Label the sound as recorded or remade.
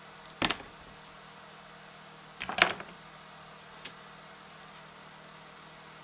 recorded